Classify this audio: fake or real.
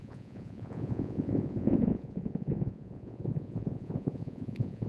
fake